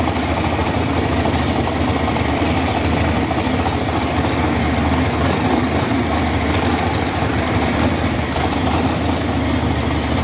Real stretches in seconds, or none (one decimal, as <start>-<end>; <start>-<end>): 0.0-0.6; 3.6-6.7; 8.8-10.2